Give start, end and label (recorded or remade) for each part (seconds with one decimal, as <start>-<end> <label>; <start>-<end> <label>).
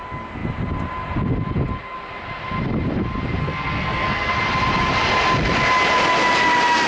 0.0-3.4 recorded; 3.4-4.3 remade; 4.3-6.9 recorded